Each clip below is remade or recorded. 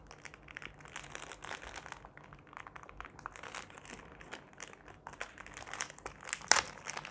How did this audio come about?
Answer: recorded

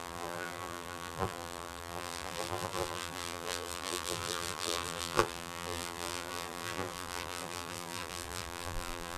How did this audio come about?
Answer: remade